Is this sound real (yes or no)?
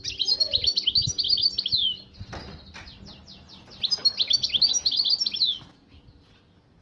yes